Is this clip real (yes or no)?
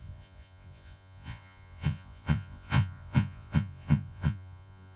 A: no